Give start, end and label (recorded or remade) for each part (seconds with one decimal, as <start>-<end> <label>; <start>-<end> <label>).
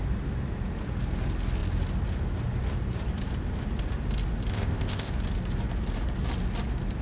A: 0.0-4.5 recorded; 4.5-5.1 remade; 5.1-7.0 recorded